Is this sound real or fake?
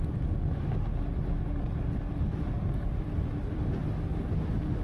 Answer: real